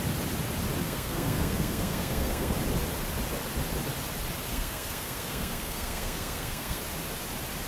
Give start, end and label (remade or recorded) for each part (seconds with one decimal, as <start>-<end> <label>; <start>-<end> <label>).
0.0-0.8 recorded; 0.8-2.6 remade; 2.6-4.5 recorded; 4.5-6.8 remade; 6.8-7.7 recorded